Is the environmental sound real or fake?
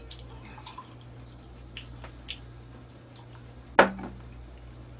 real